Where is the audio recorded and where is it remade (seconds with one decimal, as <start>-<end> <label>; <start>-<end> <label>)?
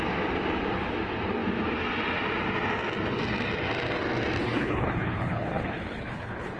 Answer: 0.0-4.4 recorded; 4.4-6.6 remade